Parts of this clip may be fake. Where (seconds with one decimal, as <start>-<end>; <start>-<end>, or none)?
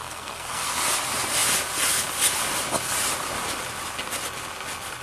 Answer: 0.0-0.8